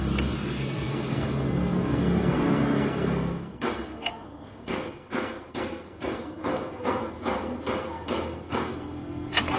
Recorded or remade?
remade